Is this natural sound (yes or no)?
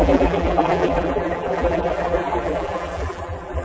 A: no